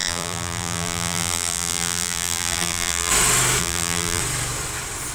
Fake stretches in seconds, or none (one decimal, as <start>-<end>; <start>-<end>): 0.0-3.1; 3.6-4.2